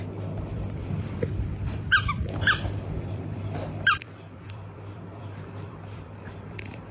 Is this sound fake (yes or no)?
yes